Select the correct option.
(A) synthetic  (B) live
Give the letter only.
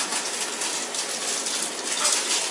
B